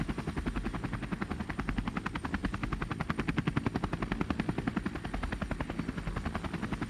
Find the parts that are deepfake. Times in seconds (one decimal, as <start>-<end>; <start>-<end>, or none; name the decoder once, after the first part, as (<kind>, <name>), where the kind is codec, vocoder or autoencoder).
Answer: none